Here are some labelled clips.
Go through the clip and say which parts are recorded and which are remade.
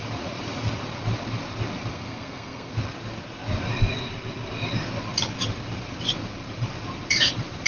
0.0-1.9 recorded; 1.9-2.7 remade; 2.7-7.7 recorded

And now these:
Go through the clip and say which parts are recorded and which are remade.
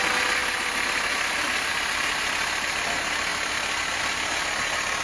0.0-5.0 recorded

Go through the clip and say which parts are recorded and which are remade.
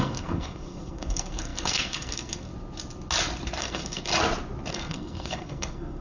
0.0-2.5 remade; 2.5-3.6 recorded; 3.6-4.1 remade; 4.1-4.7 recorded; 4.7-6.0 remade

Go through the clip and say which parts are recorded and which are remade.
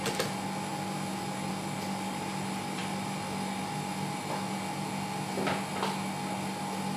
0.0-7.0 recorded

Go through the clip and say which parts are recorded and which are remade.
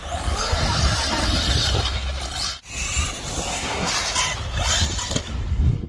0.0-3.5 recorded; 3.5-3.9 remade; 3.9-5.5 recorded; 5.5-5.9 remade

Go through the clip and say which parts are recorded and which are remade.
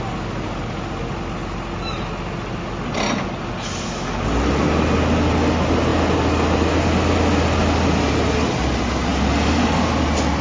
0.0-10.4 recorded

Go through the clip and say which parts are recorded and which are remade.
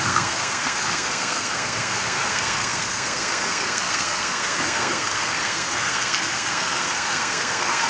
0.0-7.9 remade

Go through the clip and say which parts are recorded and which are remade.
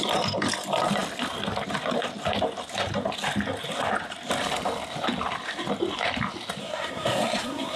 0.0-6.6 recorded; 6.6-7.8 remade